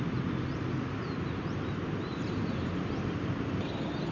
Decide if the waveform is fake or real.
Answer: real